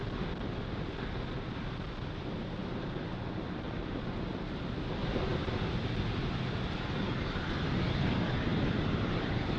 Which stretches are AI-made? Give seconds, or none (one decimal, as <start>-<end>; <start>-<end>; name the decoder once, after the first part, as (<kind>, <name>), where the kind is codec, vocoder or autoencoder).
none